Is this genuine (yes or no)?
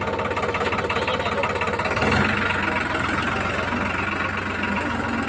yes